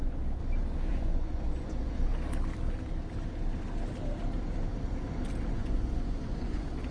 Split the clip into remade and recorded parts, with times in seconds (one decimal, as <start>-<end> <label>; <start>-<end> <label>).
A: 0.0-0.4 remade; 0.4-0.9 recorded; 0.9-2.1 remade; 2.1-5.5 recorded; 5.5-6.9 remade